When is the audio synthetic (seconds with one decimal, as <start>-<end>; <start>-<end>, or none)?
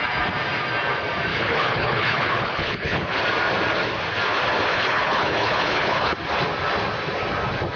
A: 1.3-3.2; 4.7-6.1